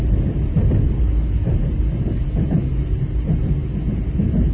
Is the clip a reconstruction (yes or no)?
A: no